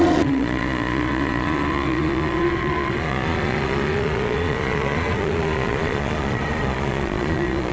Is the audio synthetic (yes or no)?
yes